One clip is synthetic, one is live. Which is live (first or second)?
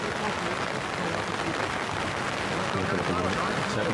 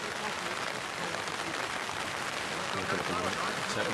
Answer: first